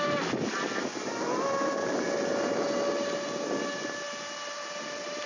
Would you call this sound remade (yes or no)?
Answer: no